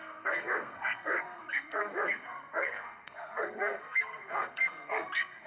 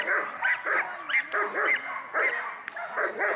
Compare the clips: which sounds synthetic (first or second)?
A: first